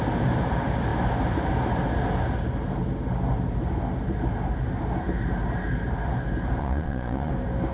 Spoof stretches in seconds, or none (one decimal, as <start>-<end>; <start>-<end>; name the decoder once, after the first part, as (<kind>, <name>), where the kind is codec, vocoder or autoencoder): 6.6-7.3 (vocoder, Vocos)